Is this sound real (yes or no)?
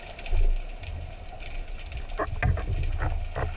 yes